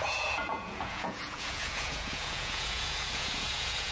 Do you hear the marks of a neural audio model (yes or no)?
yes